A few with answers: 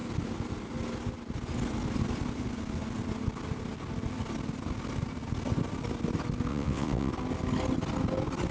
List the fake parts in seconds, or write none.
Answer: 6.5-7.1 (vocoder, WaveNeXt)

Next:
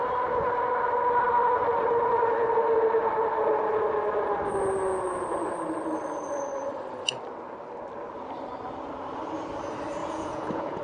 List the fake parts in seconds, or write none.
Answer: 10.0-10.8 (vocoder, Vocos)

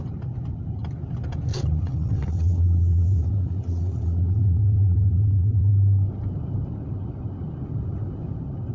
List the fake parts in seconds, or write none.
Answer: 1.5-5.7 (vocoder, WaveNeXt)

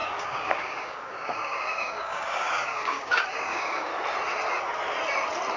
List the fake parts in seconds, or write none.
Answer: 0.0-3.9 (codec, DAC)

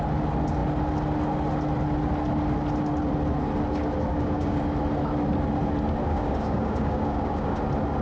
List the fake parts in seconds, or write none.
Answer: 4.1-4.6 (codec, DAC); 6.0-7.6

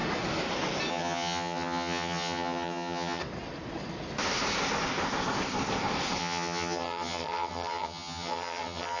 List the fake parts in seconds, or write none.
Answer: 0.9-3.2 (vocoder, HiFi-GAN); 6.2-9.0

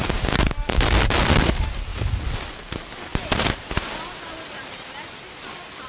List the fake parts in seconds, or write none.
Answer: 3.1-3.6 (vocoder, BigVGAN v2)